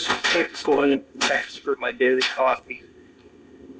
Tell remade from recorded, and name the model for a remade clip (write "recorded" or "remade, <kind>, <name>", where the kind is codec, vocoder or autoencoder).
remade, codec, ZipCodec